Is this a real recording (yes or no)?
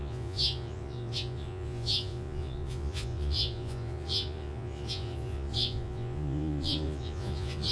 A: no